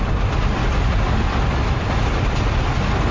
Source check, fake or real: real